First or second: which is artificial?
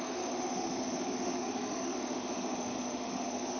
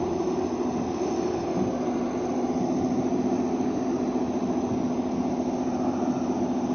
first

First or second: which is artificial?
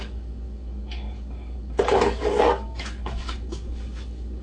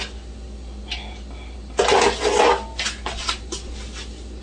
first